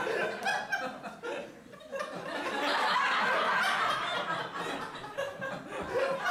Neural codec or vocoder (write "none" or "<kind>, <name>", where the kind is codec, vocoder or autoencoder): none